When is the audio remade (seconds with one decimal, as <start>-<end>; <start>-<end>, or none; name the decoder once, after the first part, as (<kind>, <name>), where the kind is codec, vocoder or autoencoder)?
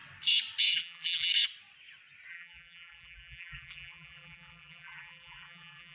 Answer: 0.7-1.3 (vocoder, BigVGAN v2); 2.3-5.9